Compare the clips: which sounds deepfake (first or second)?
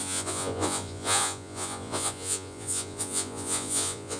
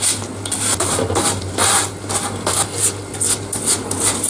first